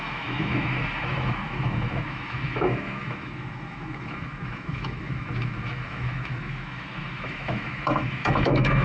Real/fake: fake